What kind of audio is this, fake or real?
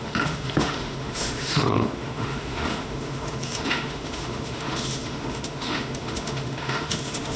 fake